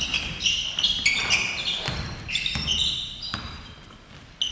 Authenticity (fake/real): real